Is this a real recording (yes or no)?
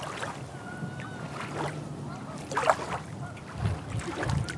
yes